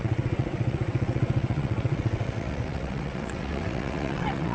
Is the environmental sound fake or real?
fake